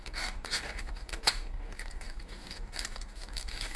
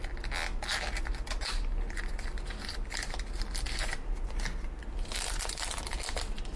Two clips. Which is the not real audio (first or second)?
first